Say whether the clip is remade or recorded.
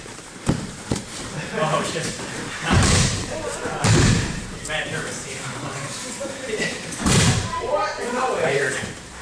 remade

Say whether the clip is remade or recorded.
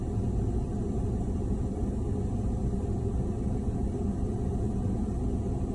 recorded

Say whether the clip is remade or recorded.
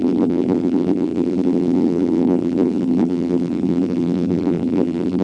remade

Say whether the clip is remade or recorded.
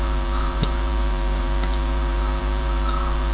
remade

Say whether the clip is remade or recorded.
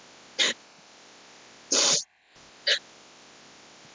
recorded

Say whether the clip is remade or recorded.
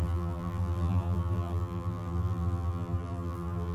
remade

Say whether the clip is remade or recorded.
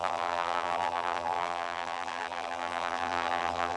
remade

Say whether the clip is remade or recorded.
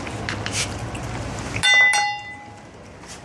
recorded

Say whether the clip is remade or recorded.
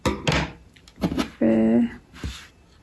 recorded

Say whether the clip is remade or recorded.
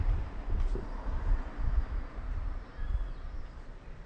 remade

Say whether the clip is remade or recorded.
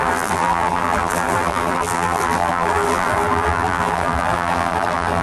remade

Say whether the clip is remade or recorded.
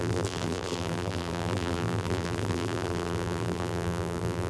remade